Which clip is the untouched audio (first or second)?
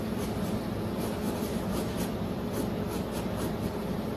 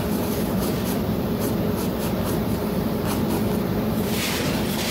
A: first